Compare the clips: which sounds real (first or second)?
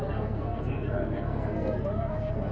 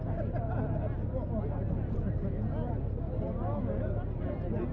second